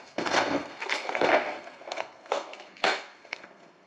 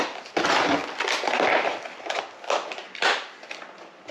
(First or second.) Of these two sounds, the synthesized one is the first